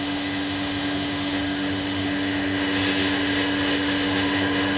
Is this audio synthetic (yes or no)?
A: yes